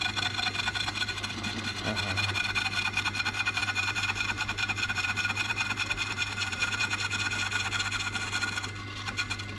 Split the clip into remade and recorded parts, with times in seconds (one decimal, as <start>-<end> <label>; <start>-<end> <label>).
0.0-3.6 recorded; 3.6-6.8 remade; 6.8-9.6 recorded

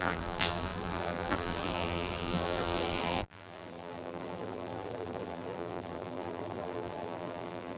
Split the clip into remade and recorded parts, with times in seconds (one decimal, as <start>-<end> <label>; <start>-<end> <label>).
0.0-7.8 remade

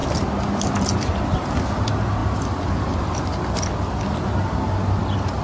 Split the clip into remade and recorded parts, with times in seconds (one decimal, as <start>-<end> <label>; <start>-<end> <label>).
0.0-2.2 recorded; 2.2-4.0 remade; 4.0-5.4 recorded

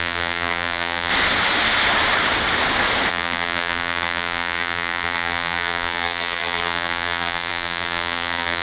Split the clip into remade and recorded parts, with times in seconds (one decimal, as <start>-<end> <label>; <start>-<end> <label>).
0.0-1.1 remade; 1.1-3.1 recorded; 3.1-8.6 remade

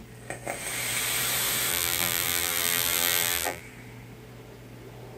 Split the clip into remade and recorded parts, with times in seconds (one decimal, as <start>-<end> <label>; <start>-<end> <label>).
0.0-1.7 recorded; 1.7-3.6 remade; 3.6-5.2 recorded